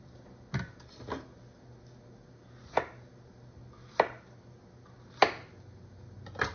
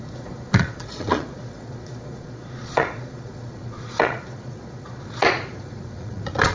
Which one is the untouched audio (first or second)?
first